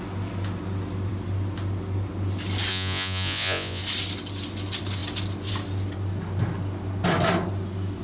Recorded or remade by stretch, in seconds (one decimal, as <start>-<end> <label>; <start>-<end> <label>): 0.0-2.7 recorded; 2.7-3.8 remade; 3.8-8.0 recorded